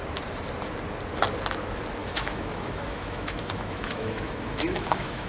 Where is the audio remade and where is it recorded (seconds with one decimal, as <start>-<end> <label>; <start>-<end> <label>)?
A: 0.0-2.0 recorded; 2.0-5.3 remade